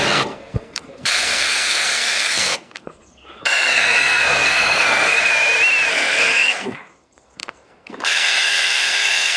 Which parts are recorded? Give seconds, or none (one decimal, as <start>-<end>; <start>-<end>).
5.3-5.9